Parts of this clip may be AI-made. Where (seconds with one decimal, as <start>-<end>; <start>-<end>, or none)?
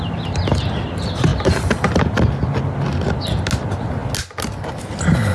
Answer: none